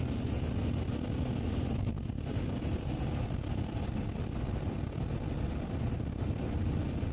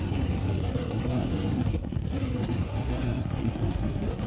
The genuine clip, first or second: first